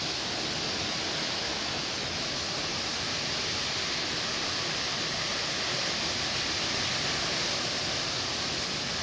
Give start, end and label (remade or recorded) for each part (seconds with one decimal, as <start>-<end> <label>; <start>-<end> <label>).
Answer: 0.0-1.2 recorded; 1.2-2.5 remade; 2.5-9.0 recorded